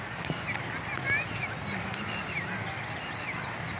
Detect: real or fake real